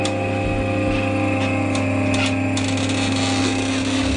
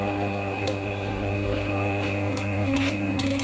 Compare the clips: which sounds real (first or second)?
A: first